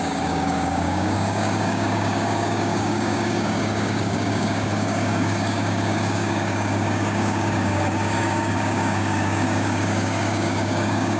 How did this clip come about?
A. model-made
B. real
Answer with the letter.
A